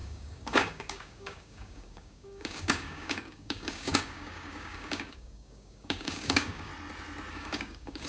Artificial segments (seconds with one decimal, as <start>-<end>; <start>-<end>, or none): 0.0-6.7; 7.3-8.1